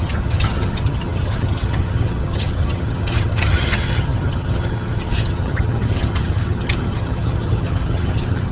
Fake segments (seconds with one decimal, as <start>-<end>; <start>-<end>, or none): 0.0-8.5